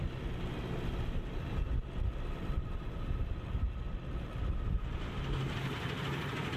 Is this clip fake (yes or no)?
no